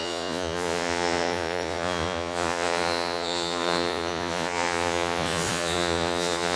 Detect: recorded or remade remade